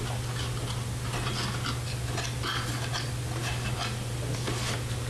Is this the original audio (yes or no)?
yes